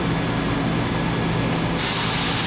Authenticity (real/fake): real